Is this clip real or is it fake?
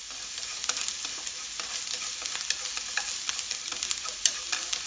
real